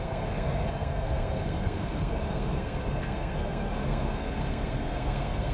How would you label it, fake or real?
fake